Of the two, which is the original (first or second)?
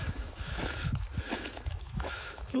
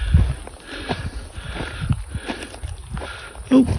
second